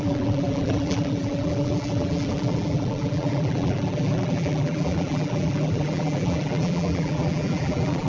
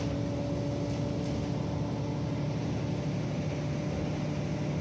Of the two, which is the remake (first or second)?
first